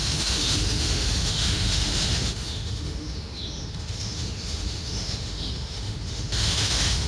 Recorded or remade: remade